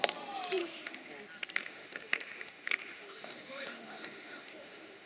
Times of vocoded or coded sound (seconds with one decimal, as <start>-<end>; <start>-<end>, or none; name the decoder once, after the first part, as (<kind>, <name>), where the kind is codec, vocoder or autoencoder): 0.6-1.1 (autoencoder, DAC-VAE); 1.6-5.1

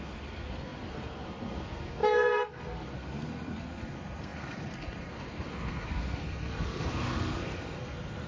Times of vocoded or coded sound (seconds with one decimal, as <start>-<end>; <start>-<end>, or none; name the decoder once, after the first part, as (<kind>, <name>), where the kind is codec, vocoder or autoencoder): 0.0-8.3 (codec, SNAC)